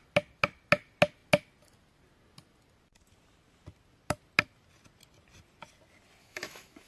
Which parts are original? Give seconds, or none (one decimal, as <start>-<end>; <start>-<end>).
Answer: 0.0-6.2